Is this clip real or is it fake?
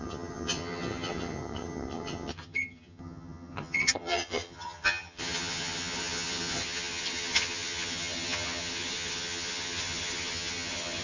fake